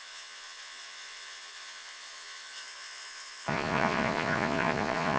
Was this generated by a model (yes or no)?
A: yes